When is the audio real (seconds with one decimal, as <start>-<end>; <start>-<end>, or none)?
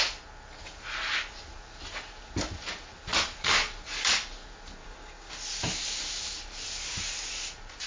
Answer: 0.0-4.8; 5.3-7.9